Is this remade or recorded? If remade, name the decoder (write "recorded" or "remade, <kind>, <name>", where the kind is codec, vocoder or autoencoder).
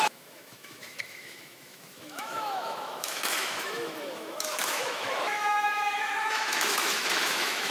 remade, autoencoder, DAC-VAE